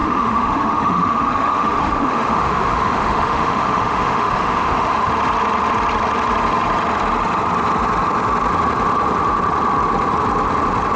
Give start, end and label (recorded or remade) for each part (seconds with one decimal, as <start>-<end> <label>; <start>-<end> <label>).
0.0-5.1 remade; 5.1-11.0 recorded